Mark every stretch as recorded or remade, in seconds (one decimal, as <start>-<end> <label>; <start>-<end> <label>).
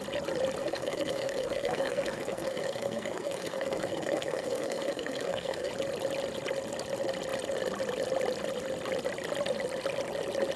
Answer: 0.0-0.6 recorded; 0.6-5.7 remade; 5.7-10.6 recorded